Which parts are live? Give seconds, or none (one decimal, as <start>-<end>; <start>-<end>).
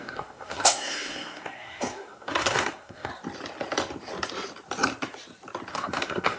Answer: 3.1-5.7